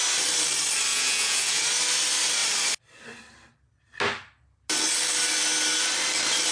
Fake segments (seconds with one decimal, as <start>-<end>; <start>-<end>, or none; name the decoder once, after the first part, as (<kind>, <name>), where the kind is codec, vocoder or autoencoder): 0.9-1.6 (vocoder, Vocos)

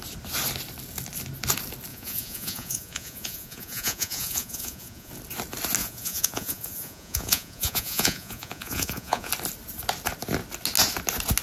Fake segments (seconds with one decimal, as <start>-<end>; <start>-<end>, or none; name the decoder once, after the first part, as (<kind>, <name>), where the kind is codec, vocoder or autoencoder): 1.9-5.1 (vocoder, Vocos); 5.8-9.3

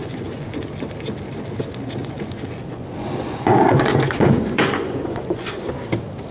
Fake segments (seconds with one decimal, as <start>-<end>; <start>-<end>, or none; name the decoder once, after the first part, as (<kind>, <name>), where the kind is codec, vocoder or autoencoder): 0.0-0.6 (vocoder, Vocos); 2.0-5.6

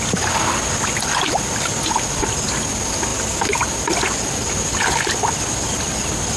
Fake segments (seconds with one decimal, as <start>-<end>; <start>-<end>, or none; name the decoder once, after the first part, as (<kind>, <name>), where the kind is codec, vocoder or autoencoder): none